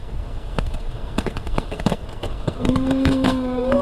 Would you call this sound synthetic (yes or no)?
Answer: yes